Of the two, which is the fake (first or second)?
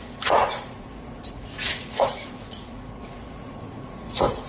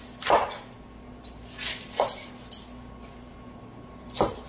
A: first